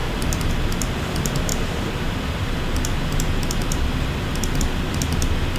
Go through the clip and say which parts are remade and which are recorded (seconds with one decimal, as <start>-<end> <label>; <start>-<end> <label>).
0.0-0.5 remade; 0.5-5.6 recorded